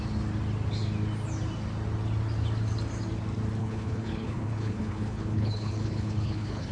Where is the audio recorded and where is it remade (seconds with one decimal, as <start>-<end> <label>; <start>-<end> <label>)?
0.0-3.6 recorded; 3.6-6.7 remade